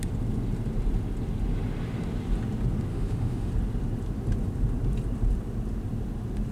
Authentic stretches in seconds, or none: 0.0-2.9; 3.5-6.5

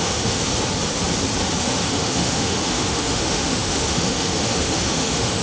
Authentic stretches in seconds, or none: 0.4-1.6